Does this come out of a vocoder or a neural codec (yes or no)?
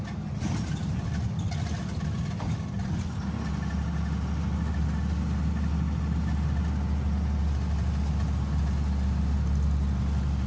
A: no